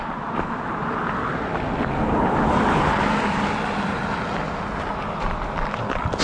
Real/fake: real